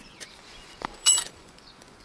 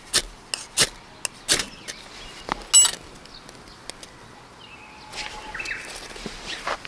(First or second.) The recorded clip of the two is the second